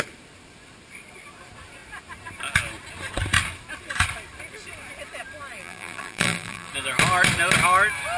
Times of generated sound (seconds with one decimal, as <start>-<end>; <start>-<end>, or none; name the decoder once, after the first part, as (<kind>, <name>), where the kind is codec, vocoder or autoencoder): 5.6-6.7 (vocoder, BigVGAN v2)